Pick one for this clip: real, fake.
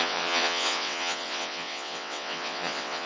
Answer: fake